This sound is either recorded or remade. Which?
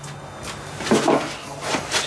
recorded